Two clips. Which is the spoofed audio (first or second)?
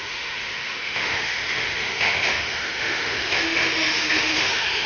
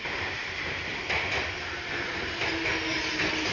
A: first